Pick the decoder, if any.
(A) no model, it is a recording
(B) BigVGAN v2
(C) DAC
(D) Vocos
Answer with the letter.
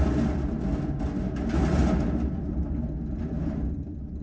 A